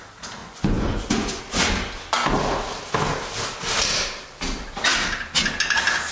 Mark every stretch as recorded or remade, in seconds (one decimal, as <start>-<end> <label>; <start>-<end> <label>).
0.0-0.4 recorded; 0.4-1.4 remade; 1.4-6.1 recorded